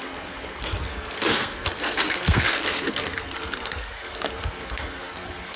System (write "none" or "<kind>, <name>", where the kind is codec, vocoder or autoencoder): codec, SNAC